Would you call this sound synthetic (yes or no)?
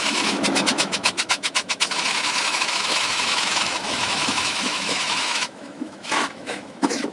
yes